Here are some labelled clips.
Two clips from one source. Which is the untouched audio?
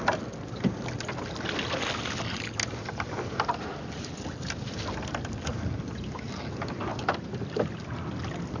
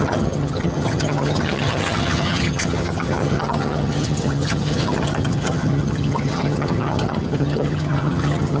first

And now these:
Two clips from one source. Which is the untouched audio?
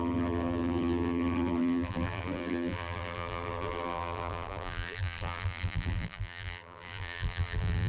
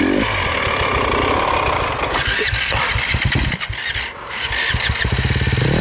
second